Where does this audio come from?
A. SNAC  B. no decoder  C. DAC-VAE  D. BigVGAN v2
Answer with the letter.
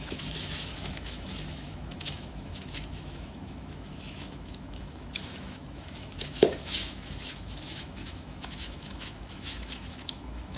C